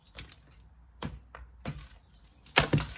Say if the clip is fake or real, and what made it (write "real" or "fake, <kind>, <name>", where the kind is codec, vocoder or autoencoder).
real